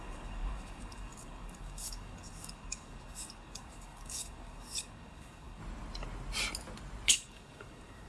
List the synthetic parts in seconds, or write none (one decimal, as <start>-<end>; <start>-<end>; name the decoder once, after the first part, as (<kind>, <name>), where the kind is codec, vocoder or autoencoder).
0.0-5.6 (codec, DAC); 7.1-8.1